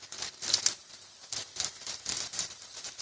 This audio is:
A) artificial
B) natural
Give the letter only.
B